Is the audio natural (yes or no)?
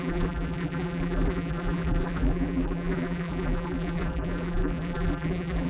no